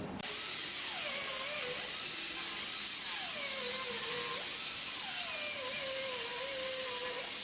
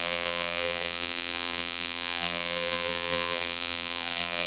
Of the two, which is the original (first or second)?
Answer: first